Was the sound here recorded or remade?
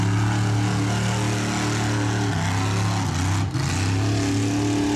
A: recorded